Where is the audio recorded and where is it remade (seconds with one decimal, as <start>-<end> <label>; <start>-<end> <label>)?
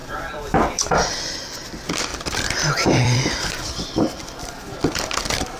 0.0-1.3 remade; 1.3-2.1 recorded; 2.1-5.6 remade